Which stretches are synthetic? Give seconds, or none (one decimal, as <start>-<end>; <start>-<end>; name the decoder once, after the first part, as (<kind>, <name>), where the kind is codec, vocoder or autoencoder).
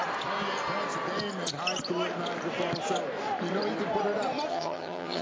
4.5-5.2 (vocoder, HiFi-GAN)